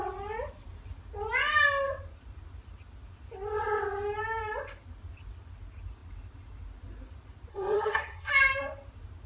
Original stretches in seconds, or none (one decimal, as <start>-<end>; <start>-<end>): 0.0-7.5; 8.3-9.3